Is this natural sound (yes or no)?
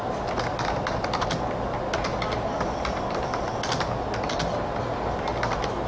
yes